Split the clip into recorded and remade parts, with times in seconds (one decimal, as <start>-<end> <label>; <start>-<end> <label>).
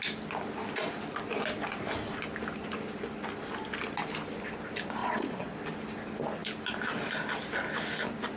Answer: 0.0-5.0 recorded; 5.0-5.6 remade; 5.6-8.4 recorded